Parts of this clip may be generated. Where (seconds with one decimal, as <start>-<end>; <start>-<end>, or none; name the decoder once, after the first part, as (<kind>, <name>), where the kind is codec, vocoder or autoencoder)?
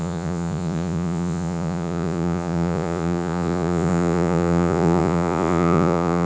0.0-6.2 (vocoder, Vocos)